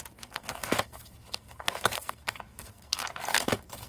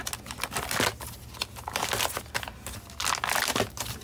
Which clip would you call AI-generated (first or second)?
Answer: first